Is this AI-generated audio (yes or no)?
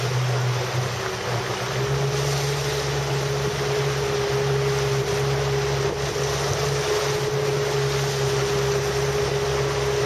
no